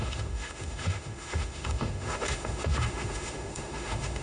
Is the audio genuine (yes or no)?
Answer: no